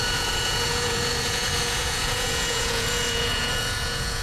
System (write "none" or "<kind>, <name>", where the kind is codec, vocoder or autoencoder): vocoder, Vocos